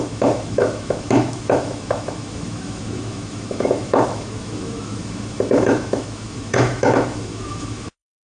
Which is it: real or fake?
fake